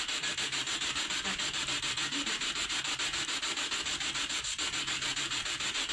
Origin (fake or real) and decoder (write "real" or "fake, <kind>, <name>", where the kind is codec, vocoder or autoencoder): fake, vocoder, BigVGAN v2